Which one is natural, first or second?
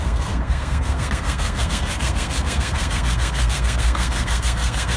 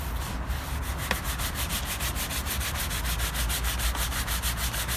second